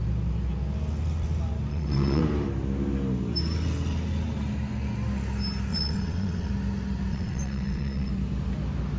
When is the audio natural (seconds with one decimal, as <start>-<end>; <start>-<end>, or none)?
0.0-1.7; 2.2-5.7; 6.5-7.1; 8.1-9.0